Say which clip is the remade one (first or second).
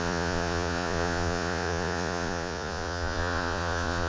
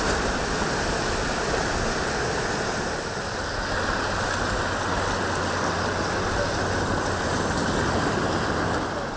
first